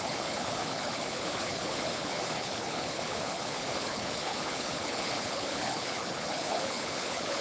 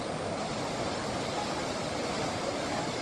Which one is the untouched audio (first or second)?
second